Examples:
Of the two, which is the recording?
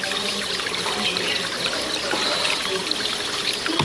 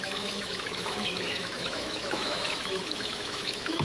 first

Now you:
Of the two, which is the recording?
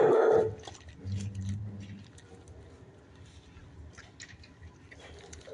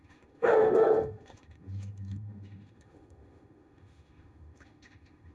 first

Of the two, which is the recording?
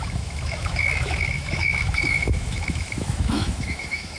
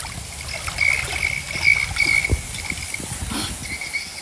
second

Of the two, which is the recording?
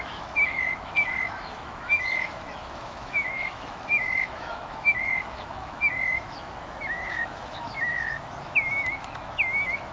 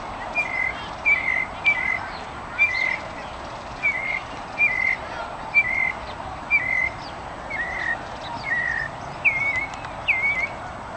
second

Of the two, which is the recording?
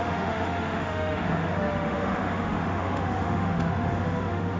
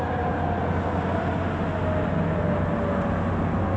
second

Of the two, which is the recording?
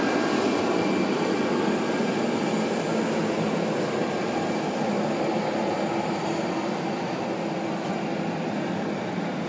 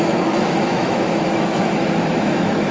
first